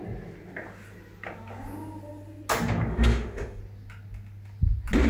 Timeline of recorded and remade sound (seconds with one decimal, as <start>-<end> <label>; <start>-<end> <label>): 0.0-2.9 recorded; 2.9-3.6 remade; 3.6-5.1 recorded